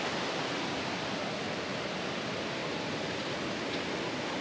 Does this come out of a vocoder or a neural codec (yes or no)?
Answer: no